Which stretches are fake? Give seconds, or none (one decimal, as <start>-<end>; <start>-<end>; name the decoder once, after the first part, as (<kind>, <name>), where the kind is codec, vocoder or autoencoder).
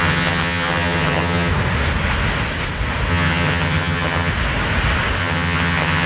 0.0-1.5 (vocoder, HiFi-GAN); 3.1-4.3; 5.2-6.1